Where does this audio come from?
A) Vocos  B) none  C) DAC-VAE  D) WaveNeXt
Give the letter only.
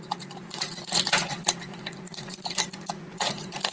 A